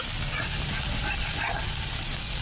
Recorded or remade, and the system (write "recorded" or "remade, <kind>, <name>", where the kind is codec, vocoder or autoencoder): recorded